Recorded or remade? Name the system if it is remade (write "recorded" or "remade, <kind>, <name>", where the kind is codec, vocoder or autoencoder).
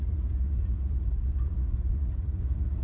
remade, vocoder, Vocos